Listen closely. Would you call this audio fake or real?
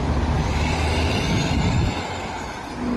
real